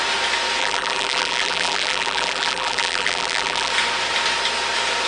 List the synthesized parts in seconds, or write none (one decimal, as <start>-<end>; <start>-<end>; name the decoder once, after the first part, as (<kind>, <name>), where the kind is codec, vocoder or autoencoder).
0.6-3.7 (vocoder, BigVGAN v2)